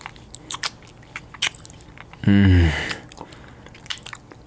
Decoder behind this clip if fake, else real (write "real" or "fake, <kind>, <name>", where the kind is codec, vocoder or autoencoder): real